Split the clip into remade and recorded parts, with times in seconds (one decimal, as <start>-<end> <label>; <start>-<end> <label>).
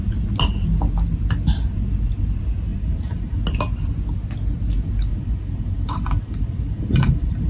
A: 0.0-2.7 recorded; 2.7-3.4 remade; 3.4-5.1 recorded; 5.1-7.5 remade